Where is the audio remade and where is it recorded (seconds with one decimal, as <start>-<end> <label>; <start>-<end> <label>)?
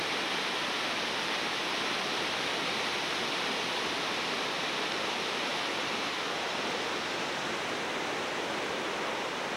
0.0-9.6 recorded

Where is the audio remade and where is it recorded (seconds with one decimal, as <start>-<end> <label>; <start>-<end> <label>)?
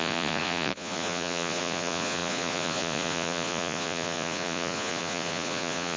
0.0-6.0 remade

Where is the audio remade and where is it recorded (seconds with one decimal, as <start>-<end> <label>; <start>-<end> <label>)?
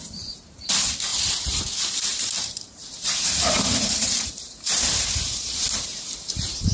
0.0-6.7 remade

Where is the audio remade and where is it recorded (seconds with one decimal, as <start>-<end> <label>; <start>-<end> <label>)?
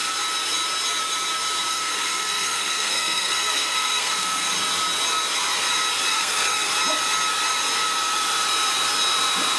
0.0-1.7 recorded; 1.7-4.5 remade; 4.5-6.1 recorded; 6.1-6.7 remade; 6.7-9.6 recorded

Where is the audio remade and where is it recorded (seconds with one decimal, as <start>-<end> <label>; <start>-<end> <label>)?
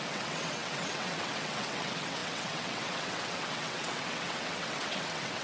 0.0-5.4 remade